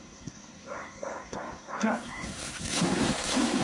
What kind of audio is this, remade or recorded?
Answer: remade